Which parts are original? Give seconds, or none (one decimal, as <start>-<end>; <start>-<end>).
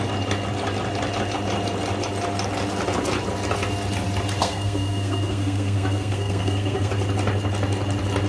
0.0-4.4; 6.9-8.3